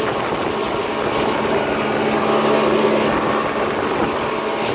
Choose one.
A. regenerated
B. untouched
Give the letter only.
B